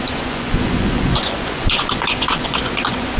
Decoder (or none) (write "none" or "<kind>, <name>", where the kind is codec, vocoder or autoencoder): vocoder, Vocos